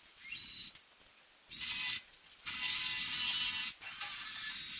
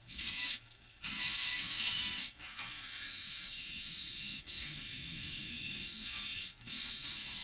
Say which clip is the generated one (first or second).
second